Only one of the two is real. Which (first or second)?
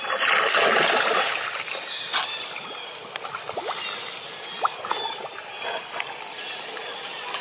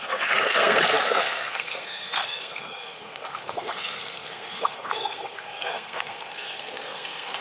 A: first